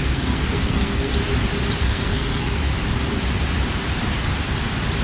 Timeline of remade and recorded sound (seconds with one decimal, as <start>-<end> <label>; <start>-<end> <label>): 0.0-1.1 remade; 1.1-1.8 recorded; 1.8-2.6 remade; 2.6-5.0 recorded

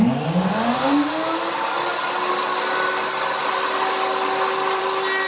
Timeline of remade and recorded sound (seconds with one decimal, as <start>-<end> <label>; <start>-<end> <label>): 0.0-5.3 recorded